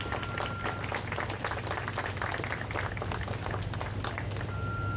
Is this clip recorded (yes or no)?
yes